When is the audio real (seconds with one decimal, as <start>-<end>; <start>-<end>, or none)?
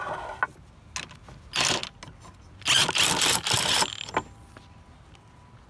0.0-5.7